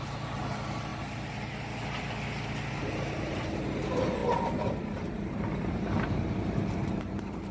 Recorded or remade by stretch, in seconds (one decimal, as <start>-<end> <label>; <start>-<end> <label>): 0.0-0.9 remade; 0.9-2.7 recorded; 2.7-7.5 remade